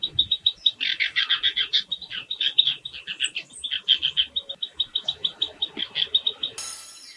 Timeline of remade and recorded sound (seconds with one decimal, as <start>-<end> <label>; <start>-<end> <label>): 0.0-7.2 recorded